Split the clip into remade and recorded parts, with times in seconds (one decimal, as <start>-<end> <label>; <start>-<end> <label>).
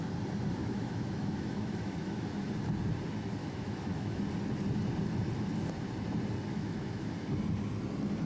0.0-0.6 recorded; 0.6-2.5 remade; 2.5-3.4 recorded; 3.4-4.2 remade; 4.2-6.5 recorded; 6.5-7.1 remade; 7.1-8.3 recorded